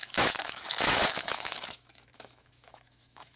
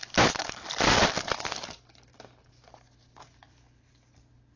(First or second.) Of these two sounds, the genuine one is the second